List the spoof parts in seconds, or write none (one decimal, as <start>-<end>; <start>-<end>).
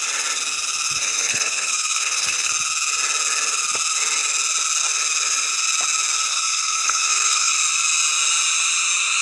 1.0-2.5; 6.3-7.5